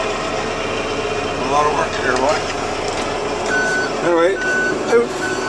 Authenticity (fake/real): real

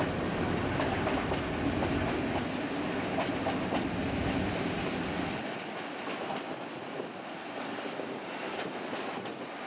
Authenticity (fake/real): real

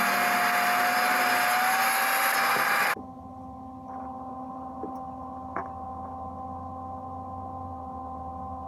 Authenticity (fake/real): real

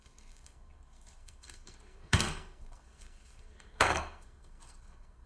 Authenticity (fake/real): fake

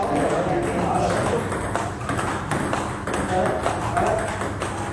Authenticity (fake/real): real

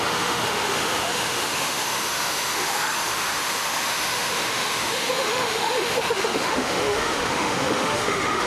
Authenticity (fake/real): fake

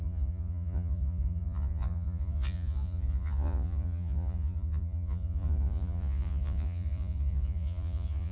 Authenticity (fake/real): fake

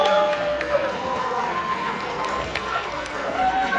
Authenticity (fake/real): fake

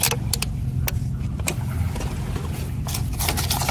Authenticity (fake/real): real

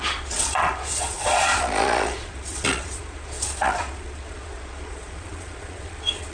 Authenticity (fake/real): fake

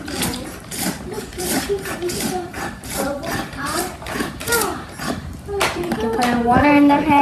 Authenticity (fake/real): fake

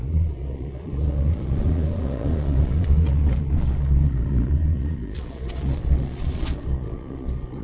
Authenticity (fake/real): fake